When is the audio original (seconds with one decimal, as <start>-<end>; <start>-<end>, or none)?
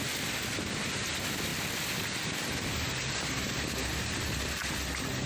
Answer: 0.0-5.3